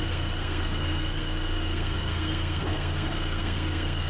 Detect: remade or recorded remade